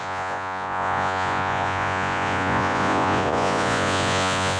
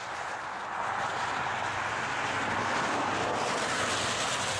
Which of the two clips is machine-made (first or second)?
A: first